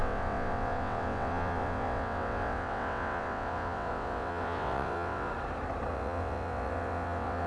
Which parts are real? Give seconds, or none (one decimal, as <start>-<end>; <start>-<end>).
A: 5.3-5.9